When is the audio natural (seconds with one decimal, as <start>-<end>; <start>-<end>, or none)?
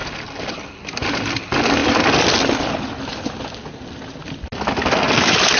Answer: 0.0-1.8; 2.6-5.6